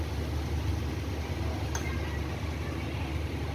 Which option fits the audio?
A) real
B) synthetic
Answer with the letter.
A